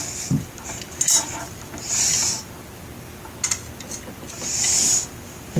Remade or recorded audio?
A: recorded